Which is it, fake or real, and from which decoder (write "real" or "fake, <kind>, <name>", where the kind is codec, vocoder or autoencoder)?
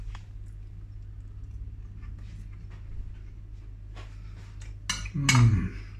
real